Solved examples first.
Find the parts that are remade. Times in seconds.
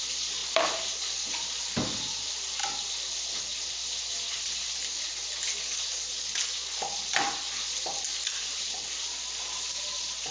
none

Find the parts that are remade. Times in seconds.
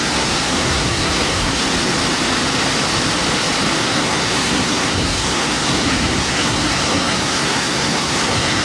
0.0-1.6; 3.8-8.6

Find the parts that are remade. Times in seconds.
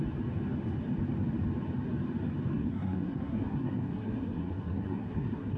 2.5-5.6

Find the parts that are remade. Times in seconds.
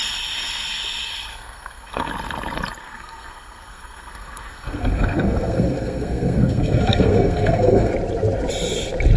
1.3-2.1; 2.8-7.9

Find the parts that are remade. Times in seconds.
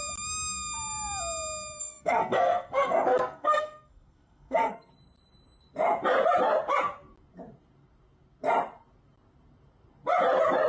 1.8-4.9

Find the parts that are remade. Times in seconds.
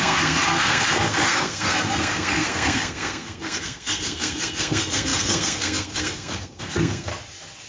0.0-7.1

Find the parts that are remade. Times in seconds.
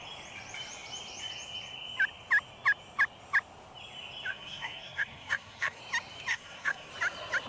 4.3-5.8; 6.3-6.9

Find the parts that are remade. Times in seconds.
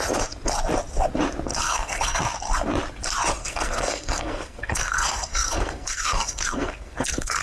1.5-2.2; 3.4-7.4